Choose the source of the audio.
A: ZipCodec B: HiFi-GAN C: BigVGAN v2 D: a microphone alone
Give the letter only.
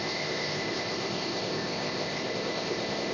A